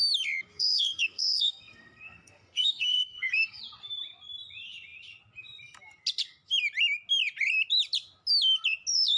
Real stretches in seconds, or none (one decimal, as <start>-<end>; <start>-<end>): 0.0-0.5; 3.6-9.2

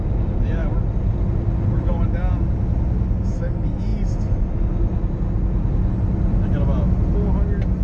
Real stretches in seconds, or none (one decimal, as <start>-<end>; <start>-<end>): 0.0-7.8

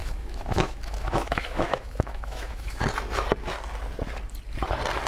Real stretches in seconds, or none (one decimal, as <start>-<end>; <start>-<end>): 2.8-5.1

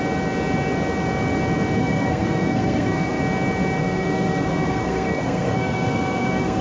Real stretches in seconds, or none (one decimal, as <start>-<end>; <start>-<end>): 0.0-1.8; 3.2-3.8

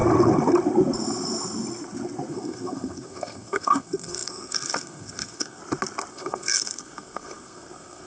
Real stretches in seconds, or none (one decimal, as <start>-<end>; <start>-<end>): 0.0-2.3; 5.6-6.1

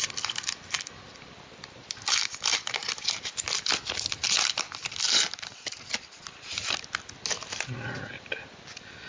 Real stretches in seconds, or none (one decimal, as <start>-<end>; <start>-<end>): 0.0-9.1

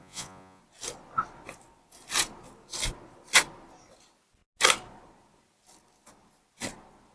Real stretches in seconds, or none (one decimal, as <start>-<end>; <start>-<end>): 0.6-7.1

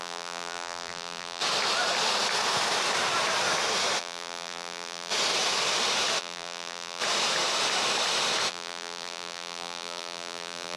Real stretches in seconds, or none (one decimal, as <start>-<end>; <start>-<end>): 1.4-4.0; 5.1-6.2; 7.0-8.5